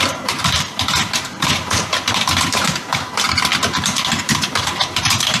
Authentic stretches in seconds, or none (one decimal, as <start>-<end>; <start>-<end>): 3.5-4.2